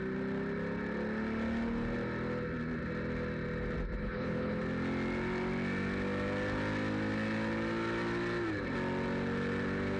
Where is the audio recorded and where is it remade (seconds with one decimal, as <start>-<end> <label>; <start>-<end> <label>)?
0.0-4.0 recorded; 4.0-4.6 remade; 4.6-10.0 recorded